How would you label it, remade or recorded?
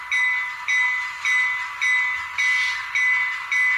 recorded